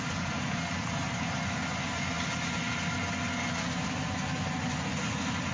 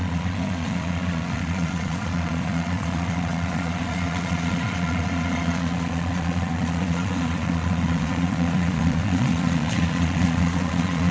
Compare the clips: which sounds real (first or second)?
first